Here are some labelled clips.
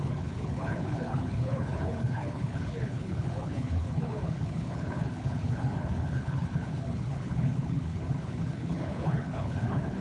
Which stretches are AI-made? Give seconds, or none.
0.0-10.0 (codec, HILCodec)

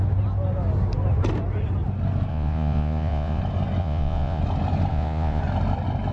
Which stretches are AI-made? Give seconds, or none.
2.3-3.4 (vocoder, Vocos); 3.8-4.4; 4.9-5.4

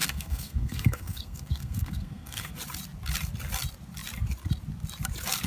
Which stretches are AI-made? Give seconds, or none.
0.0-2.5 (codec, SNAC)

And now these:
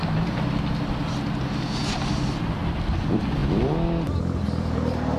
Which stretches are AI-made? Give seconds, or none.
1.8-2.3 (vocoder, BigVGAN v2)

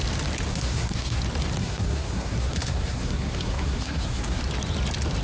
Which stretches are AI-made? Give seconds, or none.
0.5-1.2 (codec, SNAC); 1.6-4.4